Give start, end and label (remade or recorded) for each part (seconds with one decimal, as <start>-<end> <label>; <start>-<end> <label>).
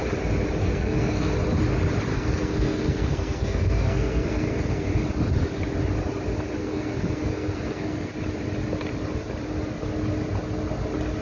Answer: 0.0-0.6 recorded; 0.6-1.3 remade; 1.3-2.1 recorded; 2.1-4.9 remade; 4.9-6.6 recorded; 6.6-8.1 remade; 8.1-11.2 recorded